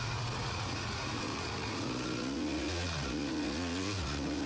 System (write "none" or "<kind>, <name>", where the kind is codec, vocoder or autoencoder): vocoder, Vocos